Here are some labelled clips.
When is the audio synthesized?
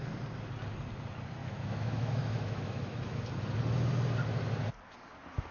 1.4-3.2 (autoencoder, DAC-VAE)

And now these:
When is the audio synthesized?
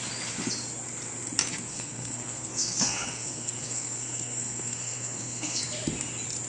1.7-5.6 (codec, SNAC)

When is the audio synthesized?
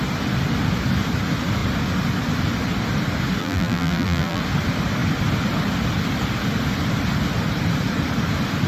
3.4-4.4 (vocoder, BigVGAN v2)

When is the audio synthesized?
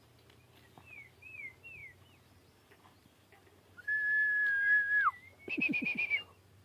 none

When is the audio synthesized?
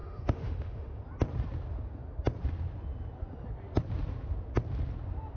0.0-1.0 (autoencoder, DAC-VAE)